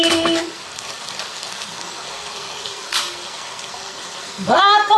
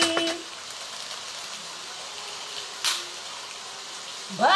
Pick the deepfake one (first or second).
first